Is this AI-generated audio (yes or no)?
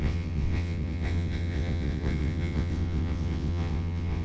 yes